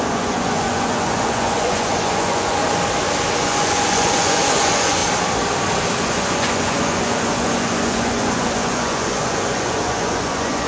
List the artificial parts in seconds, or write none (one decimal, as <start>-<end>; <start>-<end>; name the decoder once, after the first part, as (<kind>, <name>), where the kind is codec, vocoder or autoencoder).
0.0-2.6 (vocoder, Vocos); 3.4-5.0; 6.0-10.7